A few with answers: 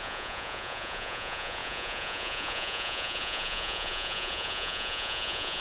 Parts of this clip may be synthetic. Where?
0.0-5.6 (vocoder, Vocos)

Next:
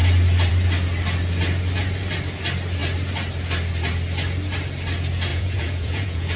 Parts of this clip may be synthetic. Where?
5.3-6.4 (vocoder, Vocos)

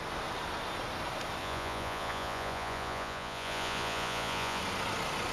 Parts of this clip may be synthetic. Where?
1.4-4.6 (vocoder, Vocos)

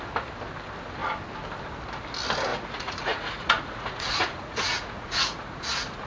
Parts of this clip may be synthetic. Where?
2.5-6.1 (vocoder, Vocos)

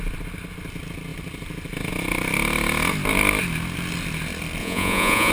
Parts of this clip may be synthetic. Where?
4.6-5.3 (vocoder, Vocos)

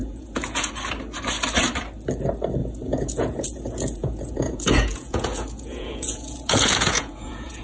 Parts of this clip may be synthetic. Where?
0.0-0.7 (vocoder, Vocos); 2.6-7.6

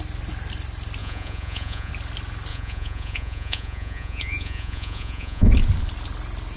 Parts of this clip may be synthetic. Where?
1.0-1.9 (vocoder, Vocos); 2.5-5.5